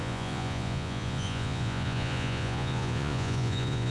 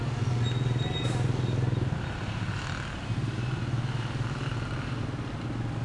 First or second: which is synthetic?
first